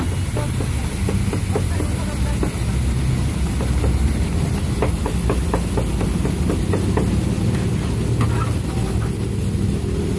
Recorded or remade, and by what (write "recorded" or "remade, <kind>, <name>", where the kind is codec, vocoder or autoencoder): recorded